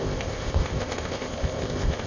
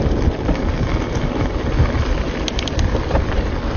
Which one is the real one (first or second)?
second